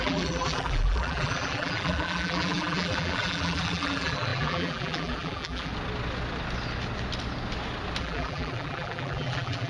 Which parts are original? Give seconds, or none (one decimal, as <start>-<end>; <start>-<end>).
5.7-8.0